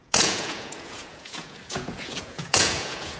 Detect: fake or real fake